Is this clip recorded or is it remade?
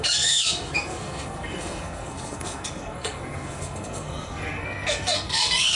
remade